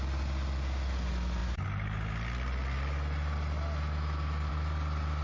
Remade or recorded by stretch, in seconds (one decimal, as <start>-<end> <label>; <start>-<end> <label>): 0.0-5.2 recorded